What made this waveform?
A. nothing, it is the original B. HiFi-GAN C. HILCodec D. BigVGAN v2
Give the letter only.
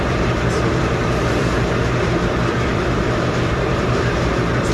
D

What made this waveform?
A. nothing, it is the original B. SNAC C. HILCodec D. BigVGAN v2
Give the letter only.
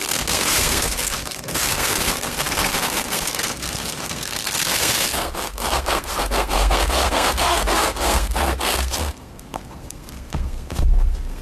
B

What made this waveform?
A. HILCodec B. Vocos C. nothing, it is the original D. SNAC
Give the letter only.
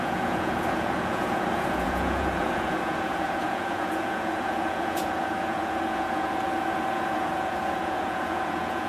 B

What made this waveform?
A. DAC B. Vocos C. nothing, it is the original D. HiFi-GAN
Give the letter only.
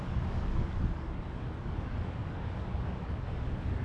A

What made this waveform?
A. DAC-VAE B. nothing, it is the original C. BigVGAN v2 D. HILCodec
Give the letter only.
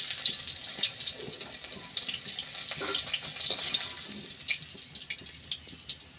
B